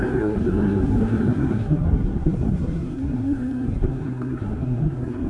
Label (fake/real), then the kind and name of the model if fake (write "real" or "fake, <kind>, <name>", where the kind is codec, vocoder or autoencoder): fake, codec, SNAC